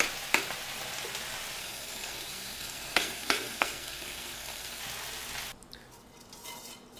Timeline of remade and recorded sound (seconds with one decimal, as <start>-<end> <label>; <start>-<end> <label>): 0.0-1.6 recorded; 1.6-4.8 remade; 4.8-7.0 recorded